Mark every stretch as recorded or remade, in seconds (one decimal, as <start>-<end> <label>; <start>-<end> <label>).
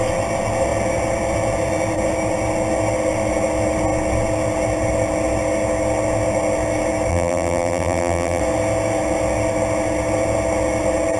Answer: 0.0-7.1 recorded; 7.1-8.4 remade; 8.4-11.2 recorded